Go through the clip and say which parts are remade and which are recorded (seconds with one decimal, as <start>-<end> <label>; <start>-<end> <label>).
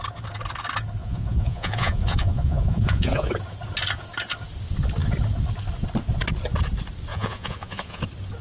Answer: 0.0-1.0 recorded; 1.0-3.3 remade; 3.3-7.1 recorded; 7.1-8.0 remade; 8.0-8.4 recorded